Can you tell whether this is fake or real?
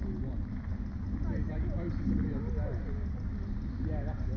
real